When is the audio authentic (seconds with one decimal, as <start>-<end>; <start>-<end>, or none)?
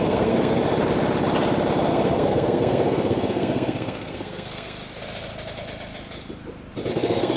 0.6-1.9; 4.8-6.9